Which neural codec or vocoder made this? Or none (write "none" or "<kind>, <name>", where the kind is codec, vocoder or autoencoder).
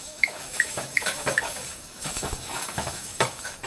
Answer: codec, DAC